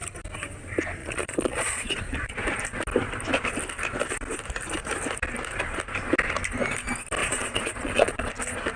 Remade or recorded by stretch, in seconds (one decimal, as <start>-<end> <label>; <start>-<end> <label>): 0.0-1.0 recorded; 1.0-2.3 remade; 2.3-7.2 recorded; 7.2-8.3 remade; 8.3-8.8 recorded

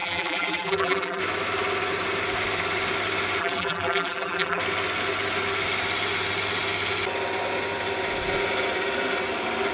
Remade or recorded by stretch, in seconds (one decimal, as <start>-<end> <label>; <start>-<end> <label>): 0.0-1.2 remade; 1.2-3.4 recorded; 3.4-4.6 remade; 4.6-9.7 recorded

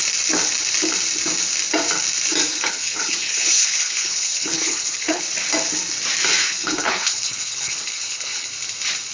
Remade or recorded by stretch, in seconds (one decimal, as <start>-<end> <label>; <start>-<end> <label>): 0.0-2.5 recorded; 2.5-5.2 remade; 5.2-6.4 recorded; 6.4-8.5 remade; 8.5-9.1 recorded

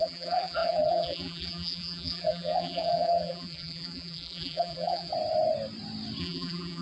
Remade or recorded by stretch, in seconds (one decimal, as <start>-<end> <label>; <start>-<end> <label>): 0.0-5.1 remade; 5.1-6.2 recorded; 6.2-6.8 remade

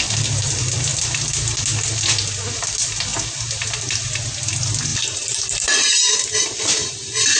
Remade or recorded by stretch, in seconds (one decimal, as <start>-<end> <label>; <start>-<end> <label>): 0.0-4.9 recorded; 4.9-5.9 remade; 5.9-7.4 recorded

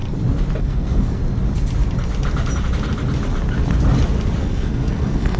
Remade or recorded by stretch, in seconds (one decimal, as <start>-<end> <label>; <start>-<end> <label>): 0.0-0.6 recorded; 0.6-1.2 remade; 1.2-4.4 recorded; 4.4-5.4 remade

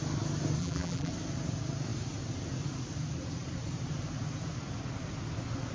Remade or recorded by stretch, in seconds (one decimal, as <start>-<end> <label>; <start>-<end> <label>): 0.0-0.6 recorded; 0.6-1.1 remade; 1.1-5.7 recorded